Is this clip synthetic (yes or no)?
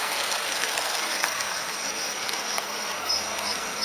yes